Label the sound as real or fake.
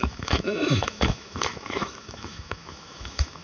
fake